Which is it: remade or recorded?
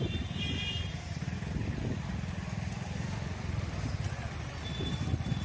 recorded